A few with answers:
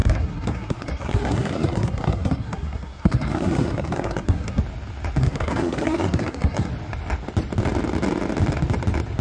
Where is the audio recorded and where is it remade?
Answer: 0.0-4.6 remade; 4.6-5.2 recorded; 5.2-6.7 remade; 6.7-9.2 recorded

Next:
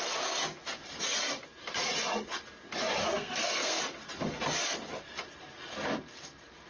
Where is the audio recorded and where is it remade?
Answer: 0.0-3.0 recorded; 3.0-3.8 remade; 3.8-6.7 recorded

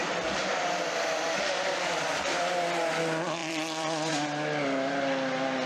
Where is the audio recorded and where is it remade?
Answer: 0.0-2.9 remade; 2.9-3.4 recorded; 3.4-4.1 remade; 4.1-5.7 recorded

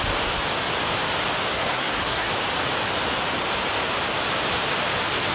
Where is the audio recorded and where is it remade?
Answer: 0.0-1.5 recorded; 1.5-2.3 remade; 2.3-5.3 recorded

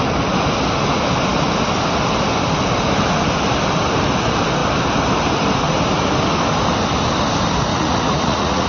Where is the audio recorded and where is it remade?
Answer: 0.0-7.7 recorded; 7.7-8.7 remade

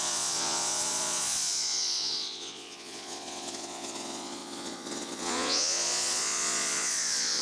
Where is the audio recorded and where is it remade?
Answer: 0.0-7.4 remade